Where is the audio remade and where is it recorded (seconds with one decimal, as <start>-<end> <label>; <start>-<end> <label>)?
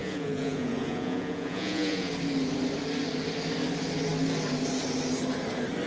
0.0-2.1 remade; 2.1-5.9 recorded